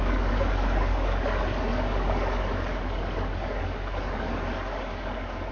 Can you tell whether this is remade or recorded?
remade